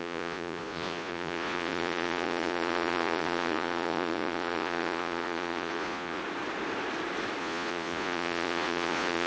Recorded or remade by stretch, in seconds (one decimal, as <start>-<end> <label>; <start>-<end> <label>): 0.0-6.2 remade; 6.2-7.4 recorded; 7.4-9.3 remade